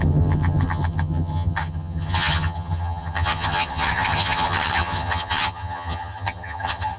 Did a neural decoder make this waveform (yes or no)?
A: yes